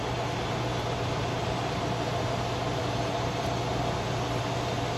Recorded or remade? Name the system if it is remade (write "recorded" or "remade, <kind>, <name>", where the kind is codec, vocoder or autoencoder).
recorded